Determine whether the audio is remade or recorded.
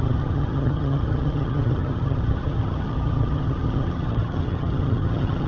remade